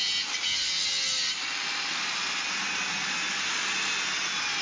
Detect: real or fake real